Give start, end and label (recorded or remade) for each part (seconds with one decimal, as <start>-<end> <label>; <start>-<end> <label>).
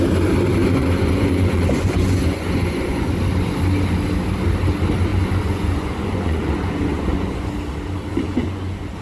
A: 0.0-0.6 recorded; 0.6-3.1 remade; 3.1-5.1 recorded; 5.1-7.5 remade; 7.5-8.1 recorded; 8.1-9.0 remade